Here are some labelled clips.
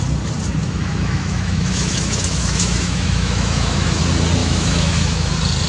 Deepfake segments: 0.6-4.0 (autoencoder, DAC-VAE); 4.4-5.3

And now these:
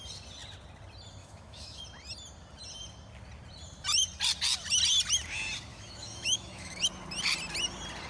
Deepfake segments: 1.2-1.8 (autoencoder, DAC-VAE); 5.7-6.8

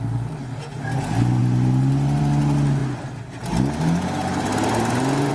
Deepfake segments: none

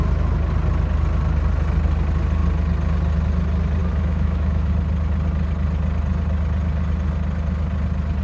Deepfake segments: 3.8-4.7 (autoencoder, DAC-VAE)

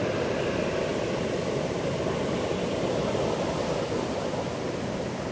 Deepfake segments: none

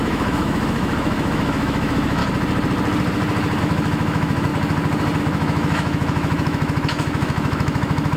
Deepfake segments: 0.0-2.2 (autoencoder, DAC-VAE); 3.6-4.5; 5.2-8.2

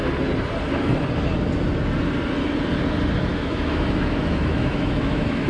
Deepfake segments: 3.3-5.5 (autoencoder, DAC-VAE)

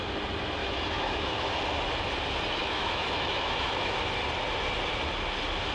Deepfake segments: 0.6-1.5 (autoencoder, DAC-VAE); 2.6-4.0